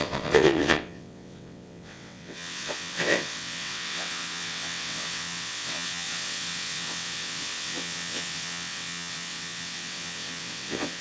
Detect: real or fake fake